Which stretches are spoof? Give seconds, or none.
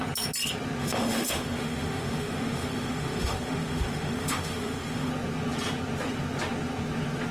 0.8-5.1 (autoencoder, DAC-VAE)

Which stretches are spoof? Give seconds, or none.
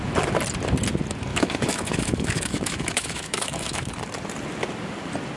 1.3-3.9 (autoencoder, DAC-VAE)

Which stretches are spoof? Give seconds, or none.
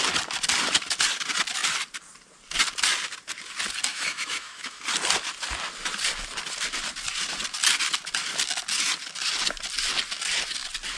3.9-4.8 (autoencoder, DAC-VAE)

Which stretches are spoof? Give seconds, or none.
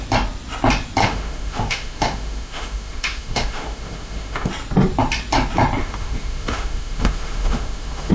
1.0-4.5 (autoencoder, DAC-VAE); 5.8-8.1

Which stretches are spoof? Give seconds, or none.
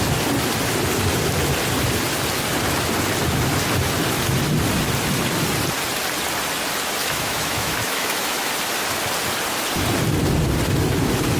7.0-8.5 (autoencoder, DAC-VAE)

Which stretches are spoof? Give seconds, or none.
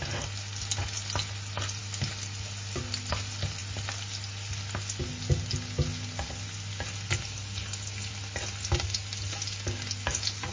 none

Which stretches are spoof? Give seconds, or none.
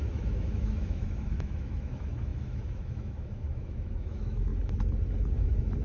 0.0-4.5 (autoencoder, DAC-VAE); 5.3-5.8